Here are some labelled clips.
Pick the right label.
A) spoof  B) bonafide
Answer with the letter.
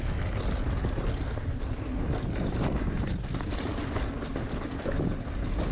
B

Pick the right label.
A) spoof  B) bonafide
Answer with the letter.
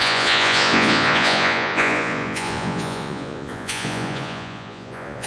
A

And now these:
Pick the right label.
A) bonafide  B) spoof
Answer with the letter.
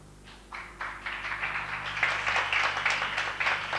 A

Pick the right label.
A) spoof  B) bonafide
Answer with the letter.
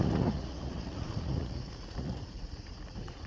A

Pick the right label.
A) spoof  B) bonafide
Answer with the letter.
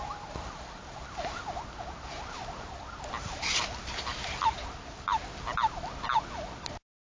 B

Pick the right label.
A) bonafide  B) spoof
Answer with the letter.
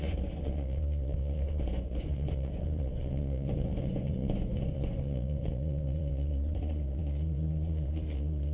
B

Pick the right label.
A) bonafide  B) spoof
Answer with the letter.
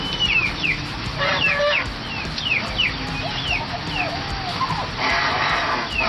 A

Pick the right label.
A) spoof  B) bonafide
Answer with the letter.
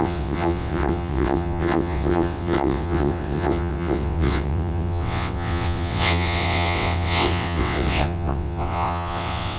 A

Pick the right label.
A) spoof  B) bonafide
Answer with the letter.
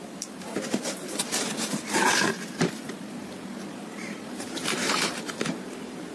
A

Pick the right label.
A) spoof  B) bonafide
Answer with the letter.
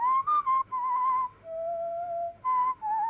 A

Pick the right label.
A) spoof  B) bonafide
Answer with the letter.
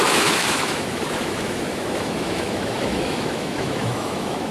A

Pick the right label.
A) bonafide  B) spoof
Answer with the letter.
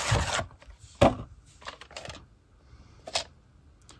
A